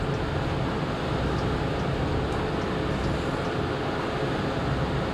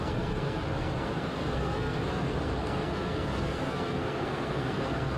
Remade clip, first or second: second